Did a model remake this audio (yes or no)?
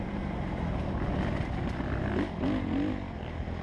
no